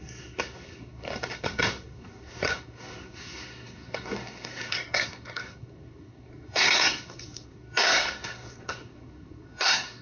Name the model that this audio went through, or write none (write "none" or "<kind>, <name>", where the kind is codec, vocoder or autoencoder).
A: codec, SNAC